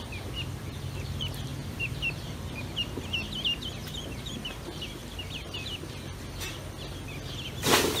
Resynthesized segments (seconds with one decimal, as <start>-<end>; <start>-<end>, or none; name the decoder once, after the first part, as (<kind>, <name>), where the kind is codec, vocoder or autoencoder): 3.8-4.3 (vocoder, BigVGAN v2); 5.0-5.8